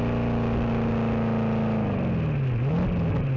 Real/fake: real